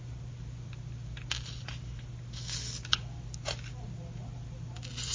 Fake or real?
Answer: real